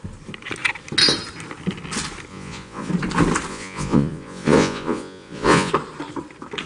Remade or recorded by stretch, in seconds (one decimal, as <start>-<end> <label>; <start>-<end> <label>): 0.0-2.3 recorded; 2.3-2.9 remade; 2.9-3.5 recorded; 3.5-5.7 remade; 5.7-6.7 recorded